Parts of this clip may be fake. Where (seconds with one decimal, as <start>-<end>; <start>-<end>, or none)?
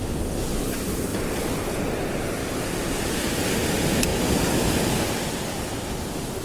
none